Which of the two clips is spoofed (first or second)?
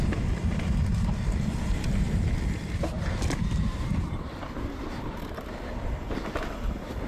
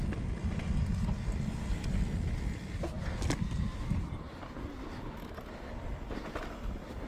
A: first